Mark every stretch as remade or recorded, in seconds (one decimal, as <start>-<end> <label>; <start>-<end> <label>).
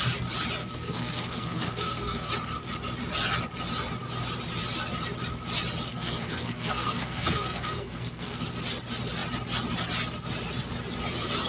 0.0-0.6 recorded; 0.6-2.3 remade; 2.3-5.9 recorded; 5.9-8.4 remade; 8.4-11.5 recorded